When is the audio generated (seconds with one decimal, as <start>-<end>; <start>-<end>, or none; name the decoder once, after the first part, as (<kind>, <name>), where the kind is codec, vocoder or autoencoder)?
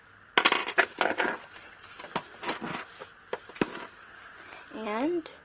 0.6-1.4 (vocoder, BigVGAN v2)